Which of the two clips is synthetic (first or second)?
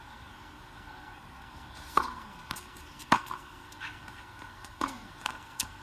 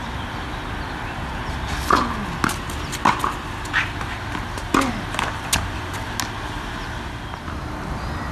first